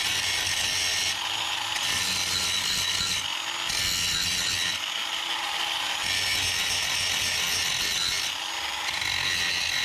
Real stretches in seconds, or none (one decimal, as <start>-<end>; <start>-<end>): 0.0-9.8